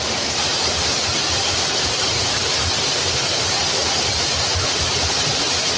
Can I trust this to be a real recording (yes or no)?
yes